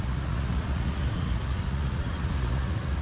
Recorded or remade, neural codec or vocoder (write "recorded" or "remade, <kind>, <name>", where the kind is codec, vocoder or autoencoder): remade, vocoder, Vocos